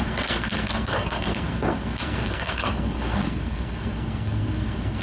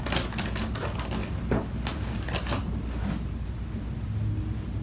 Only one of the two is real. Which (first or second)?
second